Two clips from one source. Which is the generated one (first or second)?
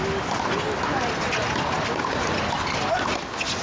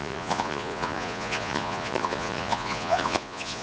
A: second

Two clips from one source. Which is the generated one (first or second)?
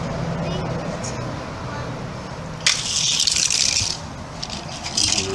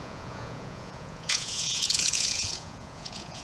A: second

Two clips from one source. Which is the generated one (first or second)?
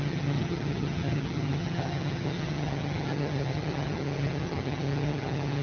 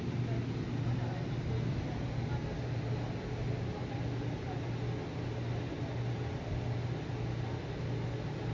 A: first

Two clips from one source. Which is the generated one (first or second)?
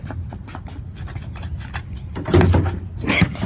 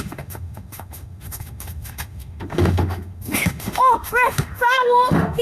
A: second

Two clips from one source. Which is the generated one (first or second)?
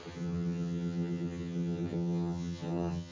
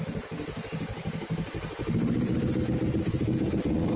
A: first